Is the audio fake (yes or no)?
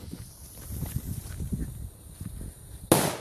no